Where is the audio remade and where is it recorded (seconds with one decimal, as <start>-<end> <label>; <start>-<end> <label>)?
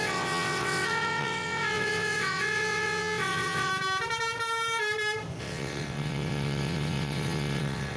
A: 0.0-3.7 remade; 3.7-5.4 recorded; 5.4-8.0 remade